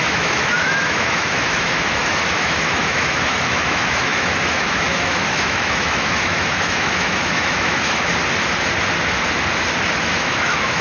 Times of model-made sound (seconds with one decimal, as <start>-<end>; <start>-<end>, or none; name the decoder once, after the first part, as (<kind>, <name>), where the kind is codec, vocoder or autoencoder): 0.0-8.1 (autoencoder, DAC-VAE); 10.0-10.8